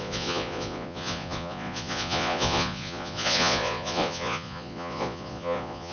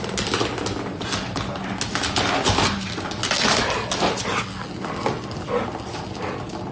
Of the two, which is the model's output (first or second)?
first